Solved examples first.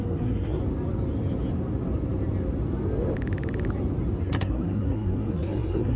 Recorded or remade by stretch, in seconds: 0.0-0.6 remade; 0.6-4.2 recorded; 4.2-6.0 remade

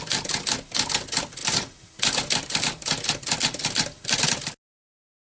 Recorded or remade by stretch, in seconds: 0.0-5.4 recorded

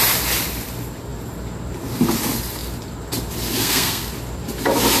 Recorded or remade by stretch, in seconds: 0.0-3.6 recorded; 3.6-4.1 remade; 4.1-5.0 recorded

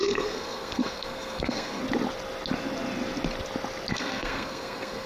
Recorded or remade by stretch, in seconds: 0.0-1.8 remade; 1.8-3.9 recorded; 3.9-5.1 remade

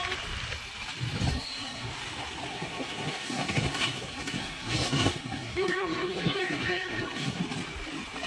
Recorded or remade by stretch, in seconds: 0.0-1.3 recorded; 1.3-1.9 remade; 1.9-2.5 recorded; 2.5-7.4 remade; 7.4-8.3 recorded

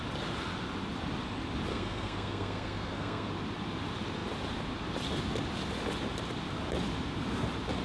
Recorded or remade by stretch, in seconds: 0.0-1.7 recorded; 1.7-3.3 remade; 3.3-7.8 recorded

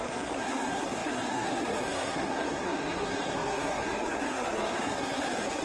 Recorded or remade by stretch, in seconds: 0.0-5.6 remade

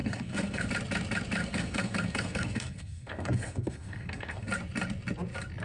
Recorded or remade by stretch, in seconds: 0.0-0.7 remade; 0.7-1.4 recorded; 1.4-4.5 remade; 4.5-5.6 recorded